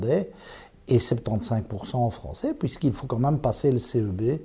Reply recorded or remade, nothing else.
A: recorded